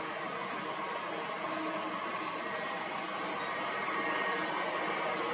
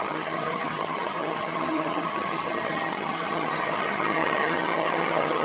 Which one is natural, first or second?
first